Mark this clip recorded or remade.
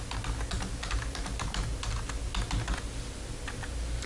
recorded